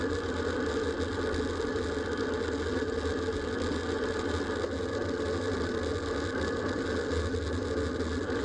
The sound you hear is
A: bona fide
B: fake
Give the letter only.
A